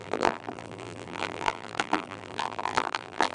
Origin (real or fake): fake